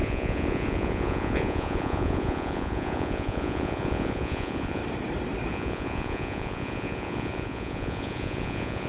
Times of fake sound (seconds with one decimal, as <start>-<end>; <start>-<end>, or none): 0.0-4.8; 5.5-8.9